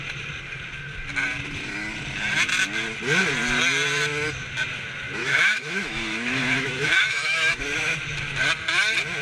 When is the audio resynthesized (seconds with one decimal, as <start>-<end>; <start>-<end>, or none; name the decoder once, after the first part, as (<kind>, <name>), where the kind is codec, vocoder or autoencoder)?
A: 5.2-7.6 (autoencoder, DAC-VAE)